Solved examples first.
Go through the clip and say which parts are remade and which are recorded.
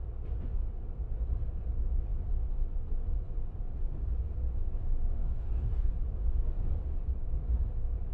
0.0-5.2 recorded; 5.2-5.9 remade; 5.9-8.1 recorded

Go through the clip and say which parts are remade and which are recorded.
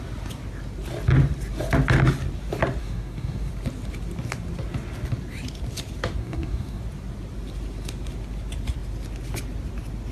0.0-2.8 recorded; 2.8-3.5 remade; 3.5-6.2 recorded; 6.2-6.8 remade; 6.8-10.1 recorded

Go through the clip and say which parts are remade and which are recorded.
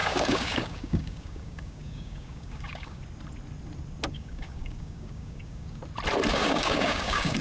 0.0-3.0 remade; 3.0-4.1 recorded; 4.1-5.8 remade; 5.8-6.3 recorded; 6.3-7.4 remade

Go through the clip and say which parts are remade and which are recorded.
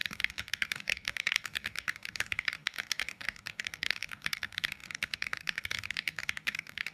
0.0-6.9 remade